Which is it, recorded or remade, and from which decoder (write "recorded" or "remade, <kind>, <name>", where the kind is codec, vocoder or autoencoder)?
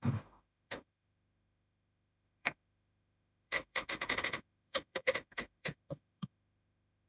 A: remade, autoencoder, DAC-VAE